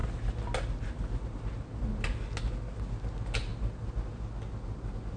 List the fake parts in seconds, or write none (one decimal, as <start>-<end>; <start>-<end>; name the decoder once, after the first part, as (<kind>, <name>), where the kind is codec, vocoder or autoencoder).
none